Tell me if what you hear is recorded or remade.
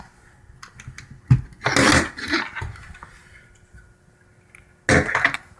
recorded